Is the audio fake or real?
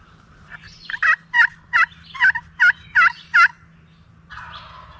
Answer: real